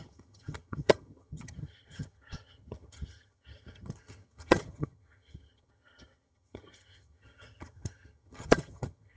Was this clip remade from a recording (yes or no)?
yes